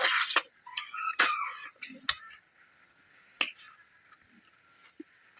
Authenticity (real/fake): real